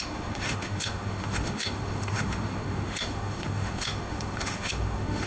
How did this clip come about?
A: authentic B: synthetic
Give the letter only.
B